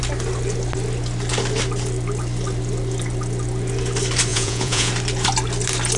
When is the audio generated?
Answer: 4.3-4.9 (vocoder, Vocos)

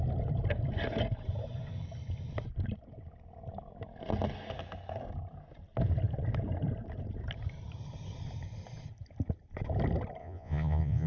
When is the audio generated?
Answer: 10.2-11.1 (vocoder, Vocos)

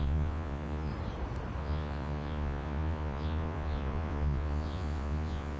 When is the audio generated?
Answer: 0.0-0.9 (vocoder, Vocos); 1.6-5.6